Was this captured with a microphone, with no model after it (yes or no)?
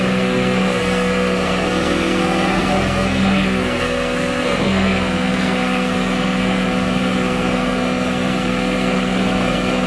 no